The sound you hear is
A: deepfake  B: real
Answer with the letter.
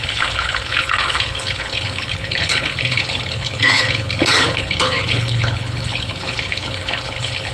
A